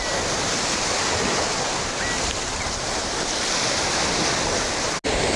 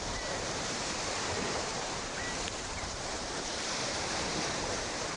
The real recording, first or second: first